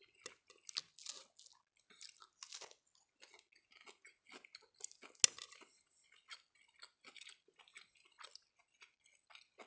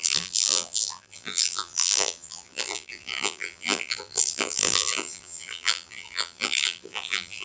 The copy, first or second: second